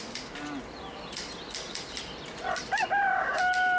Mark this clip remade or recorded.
recorded